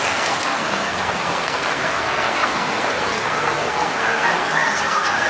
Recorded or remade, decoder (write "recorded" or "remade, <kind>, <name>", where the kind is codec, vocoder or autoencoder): remade, codec, SNAC